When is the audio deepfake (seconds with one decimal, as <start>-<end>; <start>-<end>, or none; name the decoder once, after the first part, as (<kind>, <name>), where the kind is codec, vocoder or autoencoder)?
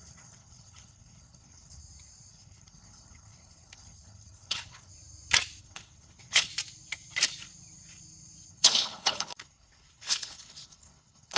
0.0-1.8 (codec, HILCodec); 2.3-4.9; 5.6-6.5; 8.5-11.4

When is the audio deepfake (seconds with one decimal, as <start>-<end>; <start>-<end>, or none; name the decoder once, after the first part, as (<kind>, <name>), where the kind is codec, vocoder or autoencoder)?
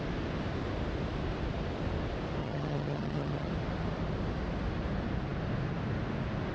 2.4-3.5 (vocoder, HiFi-GAN)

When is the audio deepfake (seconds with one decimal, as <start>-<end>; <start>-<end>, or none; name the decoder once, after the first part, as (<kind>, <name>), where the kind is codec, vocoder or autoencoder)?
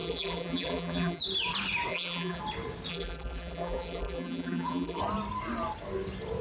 0.0-1.2 (vocoder, BigVGAN v2); 1.9-2.4; 2.9-5.0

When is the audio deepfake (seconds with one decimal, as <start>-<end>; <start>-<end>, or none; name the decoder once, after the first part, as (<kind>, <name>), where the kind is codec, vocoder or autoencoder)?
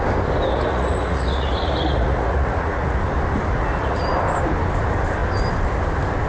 0.5-3.0 (vocoder, Vocos); 3.5-4.0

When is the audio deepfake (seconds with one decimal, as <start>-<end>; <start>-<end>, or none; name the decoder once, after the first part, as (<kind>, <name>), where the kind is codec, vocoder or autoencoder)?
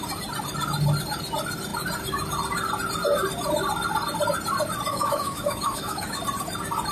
4.9-6.2 (autoencoder, DAC-VAE)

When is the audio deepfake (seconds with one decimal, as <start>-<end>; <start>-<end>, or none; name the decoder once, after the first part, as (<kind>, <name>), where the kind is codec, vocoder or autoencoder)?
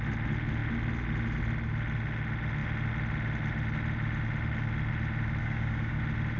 5.4-6.0 (codec, DAC)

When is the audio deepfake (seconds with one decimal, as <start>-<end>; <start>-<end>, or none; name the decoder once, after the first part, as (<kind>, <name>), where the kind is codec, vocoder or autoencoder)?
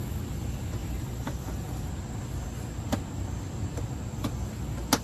0.8-1.9 (vocoder, BigVGAN v2)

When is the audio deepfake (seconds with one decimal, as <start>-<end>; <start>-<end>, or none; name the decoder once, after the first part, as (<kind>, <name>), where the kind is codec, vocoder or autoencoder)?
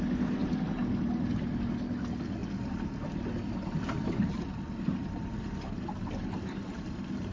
2.4-6.8 (vocoder, BigVGAN v2)